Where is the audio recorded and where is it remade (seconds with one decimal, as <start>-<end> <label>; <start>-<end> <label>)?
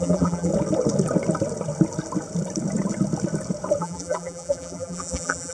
0.0-0.5 remade; 0.5-3.8 recorded; 3.8-5.5 remade